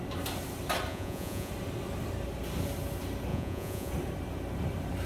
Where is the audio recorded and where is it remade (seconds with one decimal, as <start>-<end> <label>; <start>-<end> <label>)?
0.0-0.9 recorded; 0.9-1.5 remade; 1.5-3.3 recorded; 3.3-3.9 remade; 3.9-5.1 recorded